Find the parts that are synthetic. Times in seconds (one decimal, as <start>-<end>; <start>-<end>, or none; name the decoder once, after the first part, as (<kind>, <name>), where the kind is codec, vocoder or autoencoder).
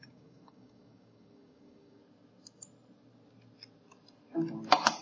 0.0-2.0 (codec, DAC)